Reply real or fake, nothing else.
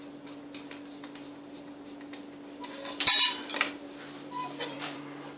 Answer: fake